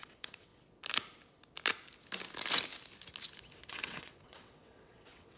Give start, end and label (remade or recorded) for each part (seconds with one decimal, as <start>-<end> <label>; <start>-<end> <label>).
0.0-0.5 remade; 0.5-3.7 recorded; 3.7-5.4 remade